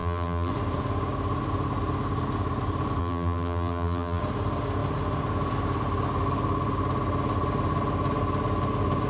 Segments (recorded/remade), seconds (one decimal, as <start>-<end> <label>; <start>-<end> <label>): 0.0-0.5 remade; 0.5-3.0 recorded; 3.0-4.2 remade; 4.2-9.1 recorded